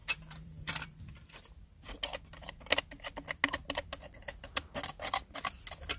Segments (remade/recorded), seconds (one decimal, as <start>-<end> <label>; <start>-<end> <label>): 0.0-1.4 remade; 1.4-6.0 recorded